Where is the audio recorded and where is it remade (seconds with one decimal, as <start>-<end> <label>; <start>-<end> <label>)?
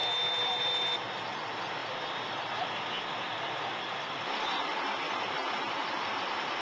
0.0-6.6 recorded